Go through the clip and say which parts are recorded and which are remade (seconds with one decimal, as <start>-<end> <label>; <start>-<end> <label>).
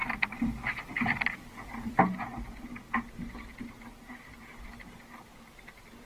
0.0-2.0 remade; 2.0-6.1 recorded